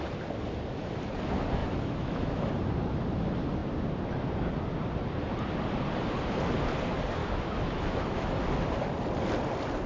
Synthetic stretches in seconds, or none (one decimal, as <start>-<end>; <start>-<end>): 1.6-2.5; 7.2-8.4